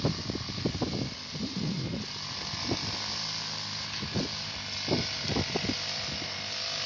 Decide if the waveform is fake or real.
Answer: real